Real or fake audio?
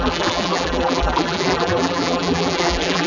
fake